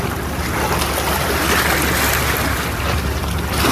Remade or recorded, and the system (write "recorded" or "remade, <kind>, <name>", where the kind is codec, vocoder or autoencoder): recorded